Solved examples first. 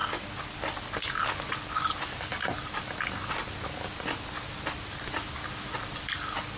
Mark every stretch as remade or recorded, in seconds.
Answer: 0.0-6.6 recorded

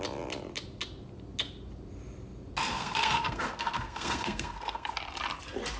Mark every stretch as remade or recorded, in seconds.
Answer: 0.0-2.7 recorded; 2.7-4.9 remade; 4.9-5.8 recorded

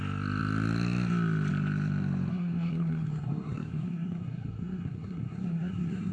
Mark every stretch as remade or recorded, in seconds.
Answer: 0.0-2.3 recorded; 2.3-6.1 remade

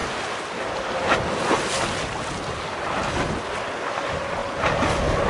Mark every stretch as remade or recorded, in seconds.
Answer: 0.0-5.3 recorded